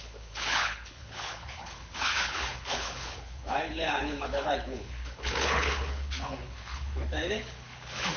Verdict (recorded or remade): remade